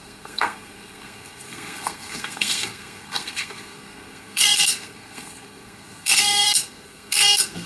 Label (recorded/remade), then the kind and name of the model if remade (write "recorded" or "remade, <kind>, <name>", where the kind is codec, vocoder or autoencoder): remade, codec, SNAC